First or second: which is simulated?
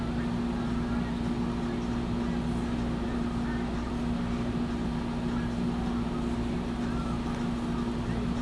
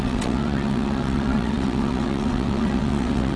second